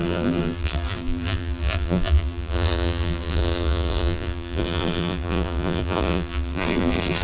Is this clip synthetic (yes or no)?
yes